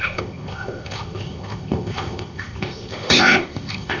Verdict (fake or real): fake